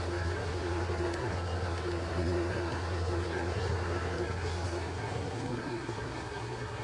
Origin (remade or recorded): remade